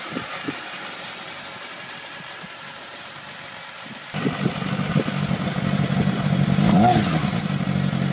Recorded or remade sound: recorded